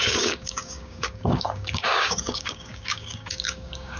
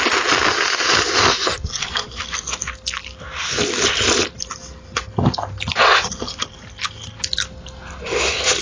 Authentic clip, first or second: second